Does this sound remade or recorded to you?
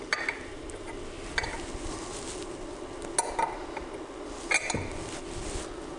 recorded